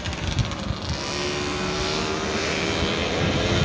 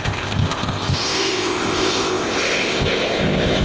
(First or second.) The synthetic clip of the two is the second